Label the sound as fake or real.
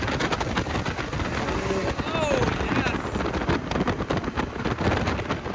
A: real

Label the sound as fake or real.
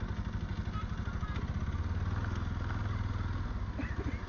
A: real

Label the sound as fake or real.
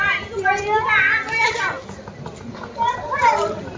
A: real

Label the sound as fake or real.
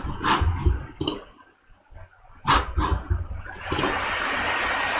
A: real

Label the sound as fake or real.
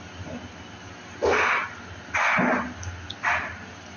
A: real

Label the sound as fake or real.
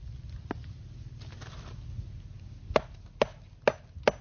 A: real